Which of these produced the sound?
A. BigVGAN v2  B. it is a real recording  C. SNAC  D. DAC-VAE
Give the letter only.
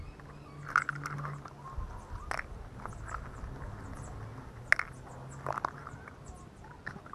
B